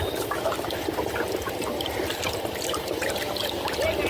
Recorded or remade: recorded